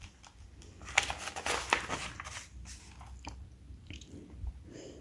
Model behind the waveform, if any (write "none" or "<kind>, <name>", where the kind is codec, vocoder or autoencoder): none